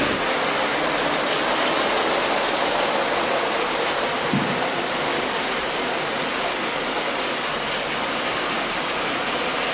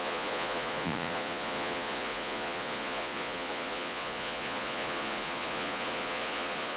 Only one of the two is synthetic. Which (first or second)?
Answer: second